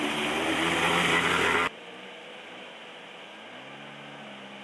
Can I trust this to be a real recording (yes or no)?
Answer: yes